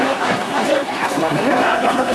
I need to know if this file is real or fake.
fake